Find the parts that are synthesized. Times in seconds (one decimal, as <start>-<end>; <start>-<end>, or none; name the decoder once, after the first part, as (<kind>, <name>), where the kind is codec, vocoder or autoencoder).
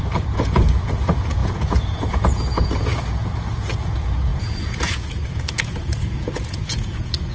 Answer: 0.0-7.3 (vocoder, Vocos)